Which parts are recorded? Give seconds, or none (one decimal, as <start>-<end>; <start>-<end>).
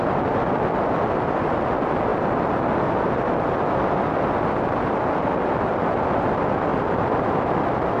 0.0-8.0